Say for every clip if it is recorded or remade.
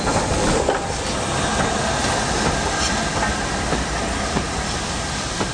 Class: recorded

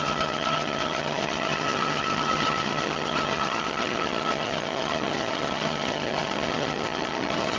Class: remade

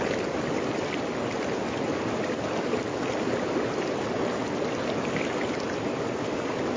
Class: recorded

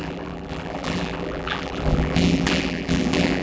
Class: remade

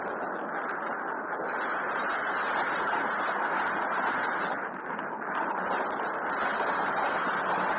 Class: recorded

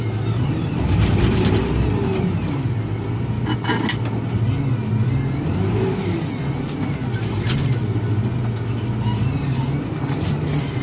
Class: recorded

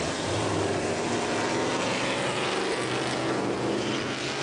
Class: recorded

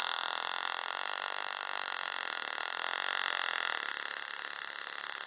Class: recorded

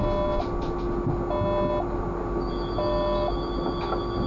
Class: recorded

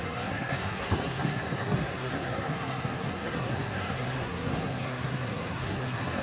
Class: remade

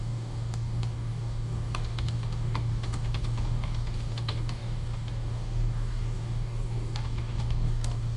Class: remade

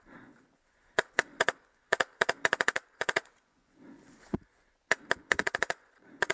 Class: remade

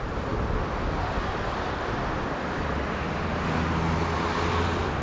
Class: recorded